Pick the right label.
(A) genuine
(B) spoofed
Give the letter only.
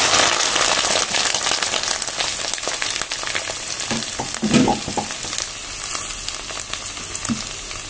A